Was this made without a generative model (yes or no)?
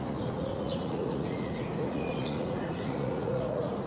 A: no